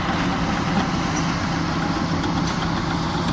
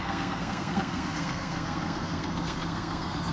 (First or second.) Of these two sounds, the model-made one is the second